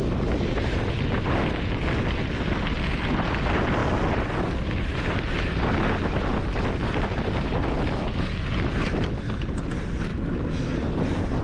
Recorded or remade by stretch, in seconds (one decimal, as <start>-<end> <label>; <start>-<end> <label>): 0.0-11.4 recorded